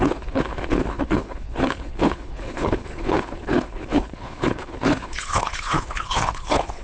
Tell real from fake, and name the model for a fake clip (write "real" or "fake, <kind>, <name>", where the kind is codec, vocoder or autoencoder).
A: fake, codec, HILCodec